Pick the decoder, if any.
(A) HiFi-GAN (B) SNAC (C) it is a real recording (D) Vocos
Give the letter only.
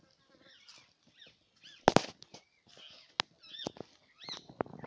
C